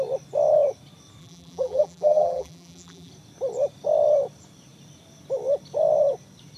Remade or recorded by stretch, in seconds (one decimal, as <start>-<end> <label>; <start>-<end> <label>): 0.0-1.2 recorded; 1.2-3.1 remade; 3.1-6.6 recorded